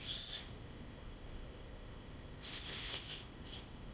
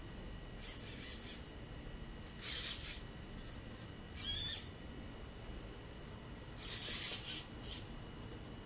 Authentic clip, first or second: second